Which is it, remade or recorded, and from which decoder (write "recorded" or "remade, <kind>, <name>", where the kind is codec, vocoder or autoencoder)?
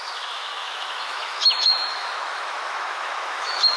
remade, autoencoder, DAC-VAE